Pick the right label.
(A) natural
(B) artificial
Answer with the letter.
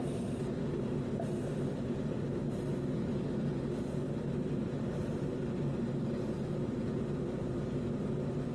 A